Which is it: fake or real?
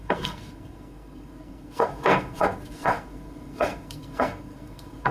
fake